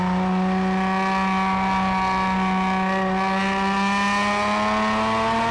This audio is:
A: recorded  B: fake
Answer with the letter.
A